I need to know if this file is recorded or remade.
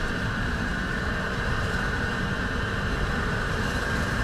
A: remade